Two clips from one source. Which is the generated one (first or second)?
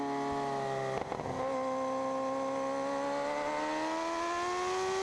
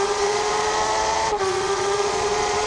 second